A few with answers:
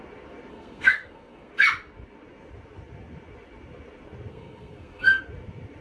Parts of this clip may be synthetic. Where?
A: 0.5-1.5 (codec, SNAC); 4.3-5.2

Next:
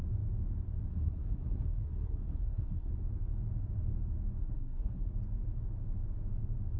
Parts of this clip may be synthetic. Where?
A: 0.9-2.9 (codec, SNAC); 4.4-5.1

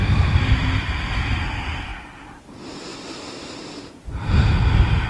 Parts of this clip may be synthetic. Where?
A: 0.6-1.3 (vocoder, BigVGAN v2); 2.9-4.6

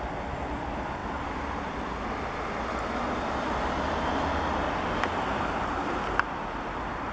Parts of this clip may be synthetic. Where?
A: none

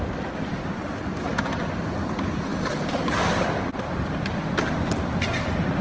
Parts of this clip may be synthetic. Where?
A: none